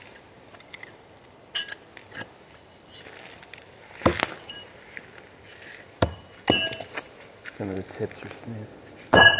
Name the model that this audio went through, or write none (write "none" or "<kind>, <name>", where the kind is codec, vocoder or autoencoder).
none